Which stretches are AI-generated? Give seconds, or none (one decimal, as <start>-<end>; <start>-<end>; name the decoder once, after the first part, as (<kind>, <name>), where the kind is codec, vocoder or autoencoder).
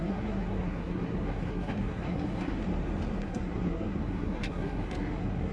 0.0-2.6 (codec, SNAC); 3.2-5.5